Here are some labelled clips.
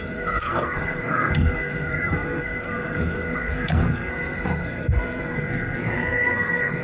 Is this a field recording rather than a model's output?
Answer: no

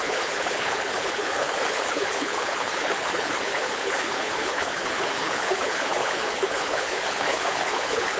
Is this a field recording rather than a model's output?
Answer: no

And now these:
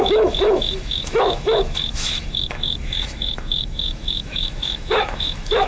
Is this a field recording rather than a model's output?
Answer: no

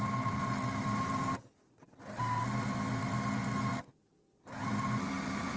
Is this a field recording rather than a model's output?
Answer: yes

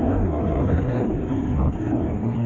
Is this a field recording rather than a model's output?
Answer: no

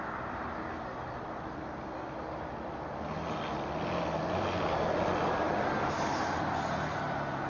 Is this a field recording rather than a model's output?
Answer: yes